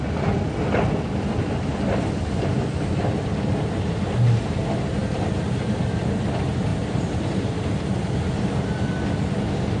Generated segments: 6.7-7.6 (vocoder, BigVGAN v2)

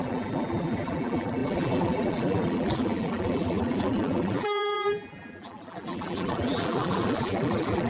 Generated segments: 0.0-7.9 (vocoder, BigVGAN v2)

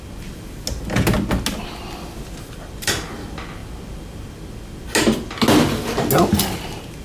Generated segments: none